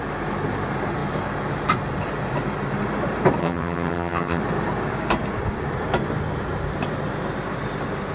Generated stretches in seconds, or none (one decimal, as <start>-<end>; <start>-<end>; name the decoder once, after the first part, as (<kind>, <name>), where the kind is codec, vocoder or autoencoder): 3.4-4.4 (vocoder, HiFi-GAN)